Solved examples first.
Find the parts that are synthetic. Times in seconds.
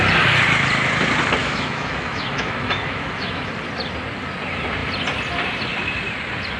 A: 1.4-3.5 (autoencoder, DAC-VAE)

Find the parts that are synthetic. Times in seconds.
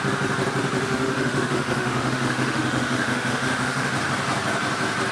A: 0.8-3.9 (autoencoder, DAC-VAE)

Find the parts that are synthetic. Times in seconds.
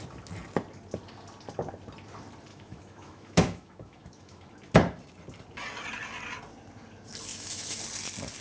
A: 2.5-4.5 (autoencoder, DAC-VAE); 7.3-7.8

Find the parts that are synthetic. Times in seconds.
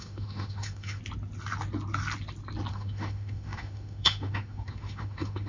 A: 0.0-1.0 (autoencoder, DAC-VAE); 2.7-5.5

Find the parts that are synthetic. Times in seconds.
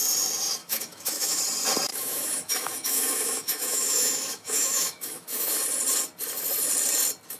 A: 0.6-1.4 (autoencoder, DAC-VAE); 1.9-5.5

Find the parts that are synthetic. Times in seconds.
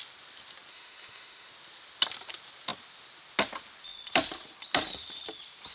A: 0.7-1.5 (autoencoder, DAC-VAE)